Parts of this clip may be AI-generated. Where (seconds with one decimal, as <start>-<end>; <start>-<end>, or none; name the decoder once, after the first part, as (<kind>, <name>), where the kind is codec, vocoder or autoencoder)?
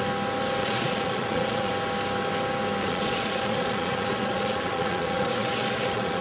0.6-1.7 (vocoder, Vocos); 2.8-6.2